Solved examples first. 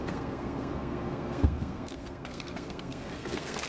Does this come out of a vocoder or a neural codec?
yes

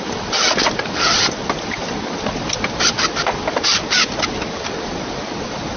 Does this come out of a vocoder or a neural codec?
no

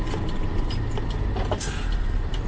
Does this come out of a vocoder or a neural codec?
no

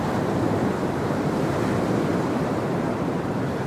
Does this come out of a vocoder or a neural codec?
yes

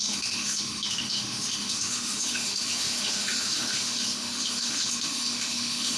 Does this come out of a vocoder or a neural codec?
yes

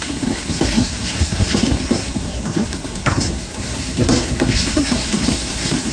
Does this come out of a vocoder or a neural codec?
yes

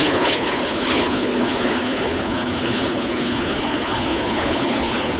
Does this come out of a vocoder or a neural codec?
yes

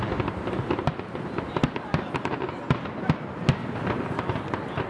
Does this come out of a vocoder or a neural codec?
no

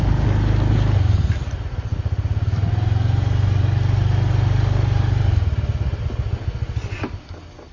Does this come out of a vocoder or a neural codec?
no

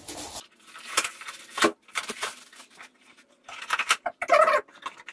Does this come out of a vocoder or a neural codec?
no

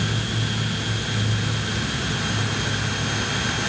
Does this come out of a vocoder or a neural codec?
no